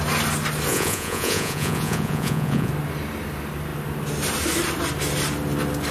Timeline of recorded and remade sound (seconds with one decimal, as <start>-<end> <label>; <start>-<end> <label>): 0.0-0.7 recorded; 0.7-2.7 remade; 2.7-5.9 recorded